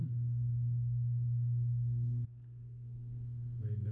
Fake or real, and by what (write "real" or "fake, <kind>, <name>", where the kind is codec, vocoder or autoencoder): fake, codec, SNAC